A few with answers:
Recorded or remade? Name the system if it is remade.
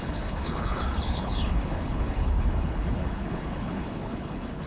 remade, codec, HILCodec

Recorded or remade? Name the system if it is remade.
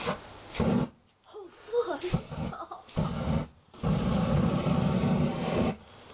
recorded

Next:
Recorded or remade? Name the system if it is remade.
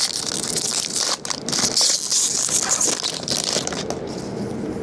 recorded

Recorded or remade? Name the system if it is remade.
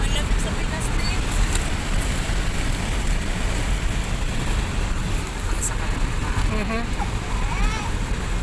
recorded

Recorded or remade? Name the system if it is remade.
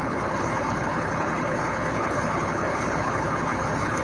remade, codec, HILCodec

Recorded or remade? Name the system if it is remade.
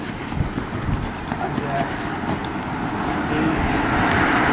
recorded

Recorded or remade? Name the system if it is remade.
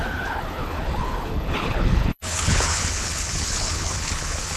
remade, codec, HILCodec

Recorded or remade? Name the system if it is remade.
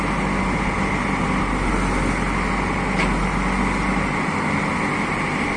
recorded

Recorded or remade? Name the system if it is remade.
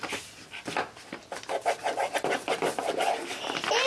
recorded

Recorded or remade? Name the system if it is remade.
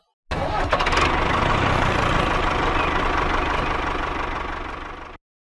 recorded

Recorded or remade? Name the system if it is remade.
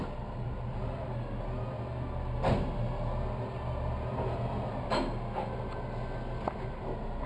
recorded